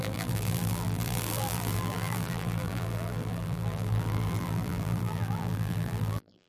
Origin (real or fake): fake